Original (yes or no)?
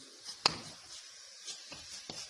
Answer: yes